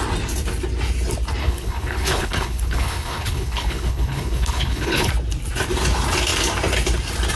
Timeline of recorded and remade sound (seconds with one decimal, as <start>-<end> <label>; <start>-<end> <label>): 0.0-1.4 recorded; 1.4-5.1 remade; 5.1-7.4 recorded